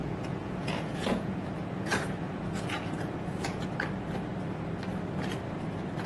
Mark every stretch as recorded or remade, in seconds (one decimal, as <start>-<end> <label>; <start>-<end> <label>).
0.0-3.7 remade; 3.7-6.1 recorded